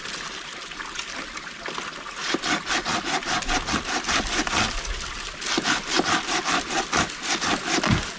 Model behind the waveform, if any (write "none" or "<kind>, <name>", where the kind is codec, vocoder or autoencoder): none